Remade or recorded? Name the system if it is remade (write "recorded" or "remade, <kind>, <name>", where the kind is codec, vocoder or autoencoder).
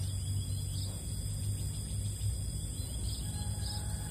recorded